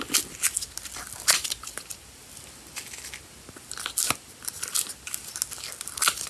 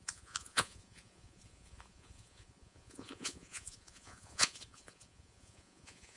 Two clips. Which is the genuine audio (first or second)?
first